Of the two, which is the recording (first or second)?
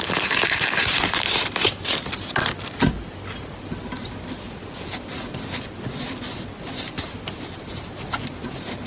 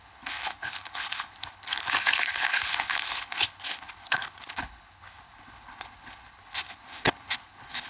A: first